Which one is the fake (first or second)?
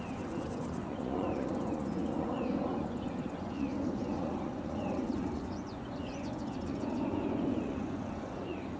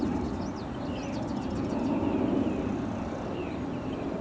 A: first